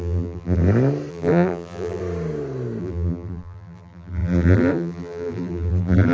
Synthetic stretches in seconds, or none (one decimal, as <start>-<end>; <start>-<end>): 0.0-0.6; 1.1-2.0; 2.8-6.1